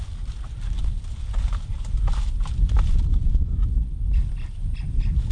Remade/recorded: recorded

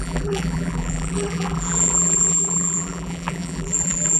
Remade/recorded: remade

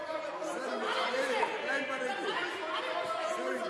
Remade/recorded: recorded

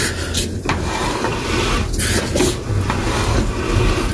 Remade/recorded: recorded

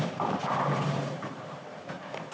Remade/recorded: remade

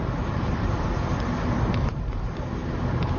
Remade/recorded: remade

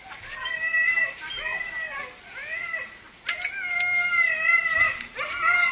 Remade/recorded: recorded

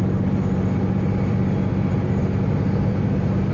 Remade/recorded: recorded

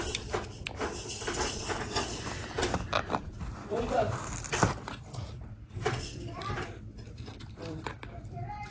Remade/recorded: remade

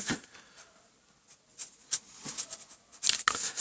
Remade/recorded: recorded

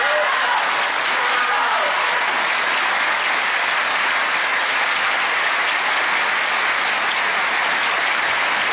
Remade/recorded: recorded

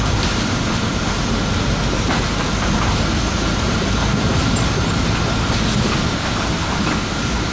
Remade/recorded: recorded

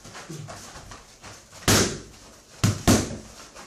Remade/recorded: recorded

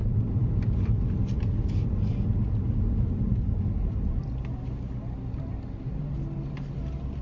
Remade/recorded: recorded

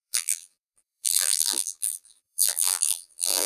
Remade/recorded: remade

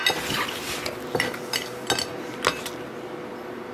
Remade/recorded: recorded